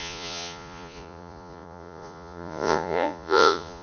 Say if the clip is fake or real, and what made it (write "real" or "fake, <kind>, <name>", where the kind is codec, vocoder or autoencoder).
fake, vocoder, Vocos